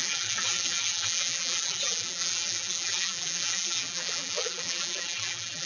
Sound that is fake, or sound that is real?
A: fake